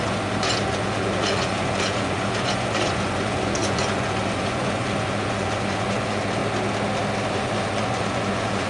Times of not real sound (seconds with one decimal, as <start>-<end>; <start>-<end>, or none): 0.0-6.4; 7.3-8.7